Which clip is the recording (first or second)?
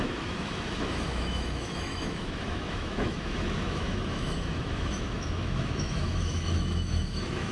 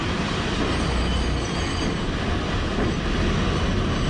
second